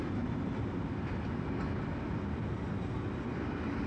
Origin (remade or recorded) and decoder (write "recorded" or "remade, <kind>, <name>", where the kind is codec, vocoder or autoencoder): recorded